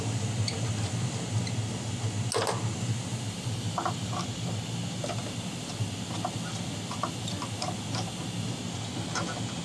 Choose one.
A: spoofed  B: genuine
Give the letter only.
B